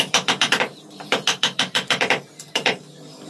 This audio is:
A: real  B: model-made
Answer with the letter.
B